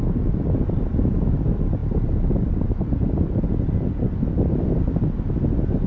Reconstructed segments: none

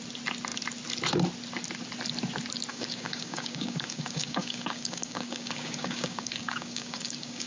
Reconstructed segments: 2.7-7.5 (codec, DAC)

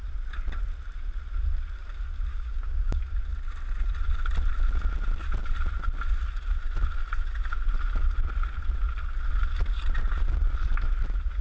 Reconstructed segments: 2.3-3.0 (codec, DAC)

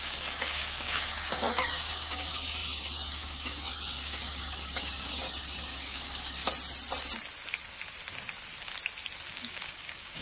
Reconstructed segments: 0.0-6.4 (codec, DAC); 9.3-10.2

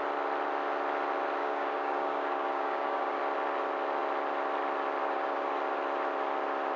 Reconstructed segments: 1.4-3.2 (codec, DAC); 5.0-5.6

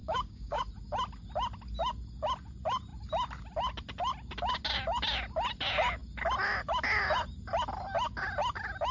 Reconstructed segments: 0.0-0.6 (codec, DAC)